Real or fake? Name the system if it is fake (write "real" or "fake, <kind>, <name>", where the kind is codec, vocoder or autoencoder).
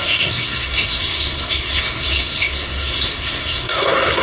fake, codec, SNAC